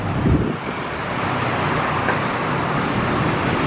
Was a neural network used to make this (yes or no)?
yes